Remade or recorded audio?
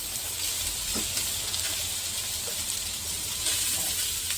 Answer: remade